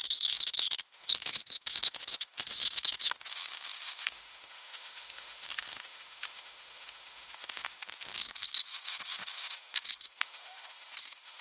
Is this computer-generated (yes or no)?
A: yes